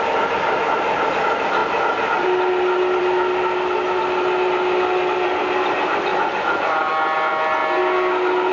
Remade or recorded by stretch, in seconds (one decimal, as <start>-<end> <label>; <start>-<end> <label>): 0.0-6.1 recorded; 6.1-6.9 remade; 6.9-8.5 recorded